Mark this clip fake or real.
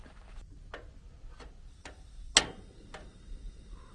real